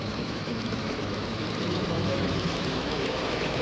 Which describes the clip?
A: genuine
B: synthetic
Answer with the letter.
B